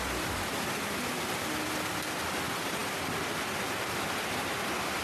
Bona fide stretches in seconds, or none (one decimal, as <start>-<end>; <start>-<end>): 0.0-5.0